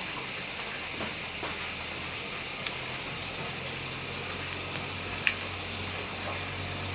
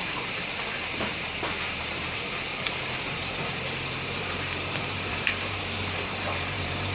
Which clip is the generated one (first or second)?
second